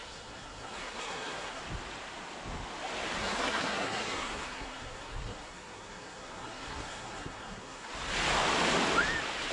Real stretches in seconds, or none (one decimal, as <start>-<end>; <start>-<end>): 1.6-3.2; 7.9-9.5